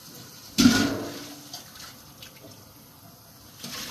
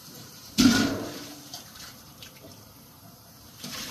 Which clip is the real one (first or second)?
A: first